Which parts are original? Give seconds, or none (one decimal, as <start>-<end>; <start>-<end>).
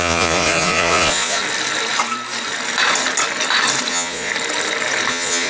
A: 1.4-3.9; 4.3-5.1